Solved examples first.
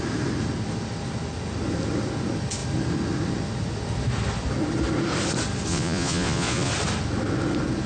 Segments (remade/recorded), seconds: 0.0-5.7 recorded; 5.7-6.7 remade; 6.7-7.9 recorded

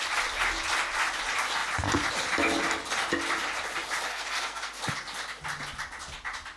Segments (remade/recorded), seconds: 0.0-4.1 recorded; 4.1-4.8 remade; 4.8-6.6 recorded

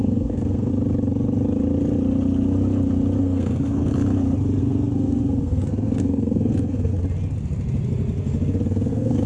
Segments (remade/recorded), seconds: 0.0-0.7 remade; 0.7-3.2 recorded; 3.2-3.9 remade; 3.9-4.6 recorded; 4.6-6.9 remade; 6.9-8.9 recorded; 8.9-9.3 remade

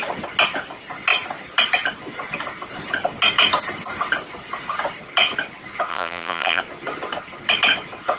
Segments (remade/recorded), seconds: 0.0-5.9 recorded; 5.9-6.6 remade; 6.6-8.2 recorded

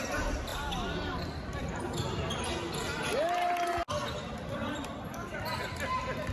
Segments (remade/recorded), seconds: 0.0-0.5 recorded; 0.5-1.8 remade; 1.8-4.0 recorded; 4.0-5.4 remade; 5.4-6.3 recorded

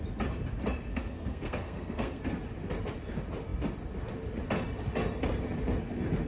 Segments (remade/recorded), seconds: 0.0-0.9 recorded; 0.9-2.2 remade; 2.2-6.3 recorded

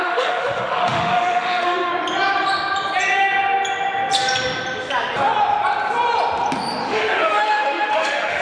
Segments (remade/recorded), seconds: 0.0-1.9 remade; 1.9-6.8 recorded; 6.8-8.4 remade